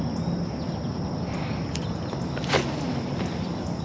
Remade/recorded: recorded